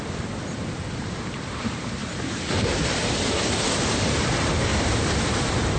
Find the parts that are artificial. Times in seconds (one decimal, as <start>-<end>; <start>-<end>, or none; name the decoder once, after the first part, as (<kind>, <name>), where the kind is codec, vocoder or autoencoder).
4.7-5.8 (vocoder, BigVGAN v2)